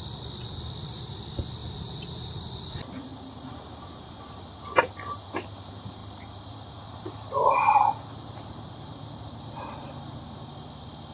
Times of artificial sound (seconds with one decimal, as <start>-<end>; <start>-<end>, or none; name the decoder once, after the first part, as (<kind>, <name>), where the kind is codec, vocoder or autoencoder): 0.0-1.6 (vocoder, BigVGAN v2); 2.3-11.1